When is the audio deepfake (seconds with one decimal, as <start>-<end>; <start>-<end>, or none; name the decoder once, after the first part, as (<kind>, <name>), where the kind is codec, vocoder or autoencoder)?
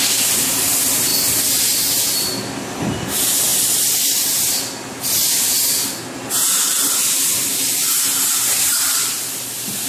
none